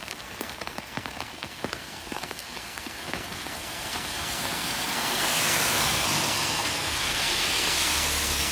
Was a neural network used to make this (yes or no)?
yes